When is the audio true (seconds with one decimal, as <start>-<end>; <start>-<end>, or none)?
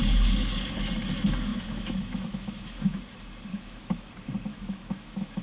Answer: 0.0-1.5; 3.0-3.5; 4.1-4.5